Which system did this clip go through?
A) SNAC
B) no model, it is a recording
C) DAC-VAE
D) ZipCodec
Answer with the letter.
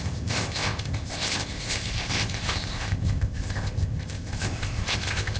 D